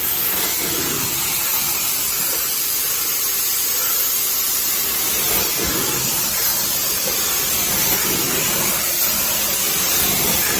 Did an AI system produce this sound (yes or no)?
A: no